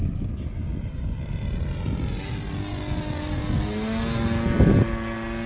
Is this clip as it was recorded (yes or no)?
yes